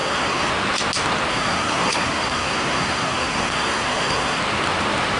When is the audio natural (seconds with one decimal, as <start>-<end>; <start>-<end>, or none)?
0.5-1.3; 4.4-5.2